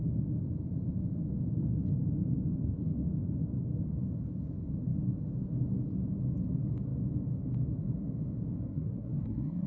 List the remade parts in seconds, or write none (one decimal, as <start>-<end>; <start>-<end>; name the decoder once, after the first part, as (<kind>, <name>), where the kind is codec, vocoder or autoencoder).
8.7-9.7 (codec, SNAC)